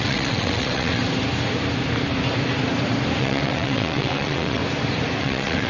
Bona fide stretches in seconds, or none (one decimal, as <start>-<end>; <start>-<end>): 1.0-3.2; 4.6-5.2